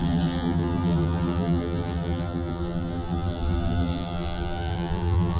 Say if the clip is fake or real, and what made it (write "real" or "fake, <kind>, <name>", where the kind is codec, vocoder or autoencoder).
fake, vocoder, BigVGAN v2